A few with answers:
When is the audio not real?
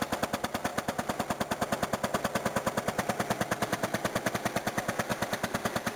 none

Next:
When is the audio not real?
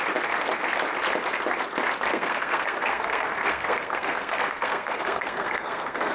2.1-6.1 (codec, SNAC)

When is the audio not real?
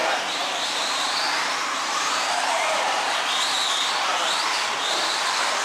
0.0-3.4 (vocoder, BigVGAN v2); 4.1-5.0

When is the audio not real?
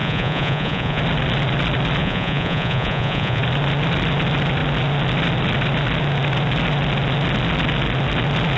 0.0-1.0 (vocoder, Vocos); 2.0-3.4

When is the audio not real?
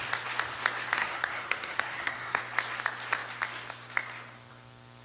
1.0-2.4 (codec, SNAC)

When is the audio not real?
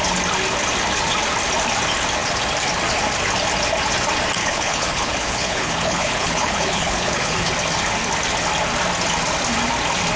4.4-7.5 (codec, HILCodec)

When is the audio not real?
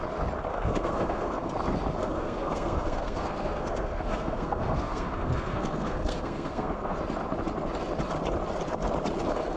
0.5-1.5 (codec, SNAC); 2.0-7.0